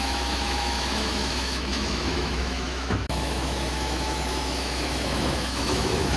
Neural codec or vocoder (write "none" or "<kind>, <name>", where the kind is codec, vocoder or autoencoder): autoencoder, DAC-VAE